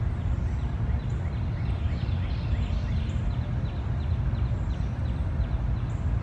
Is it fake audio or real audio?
real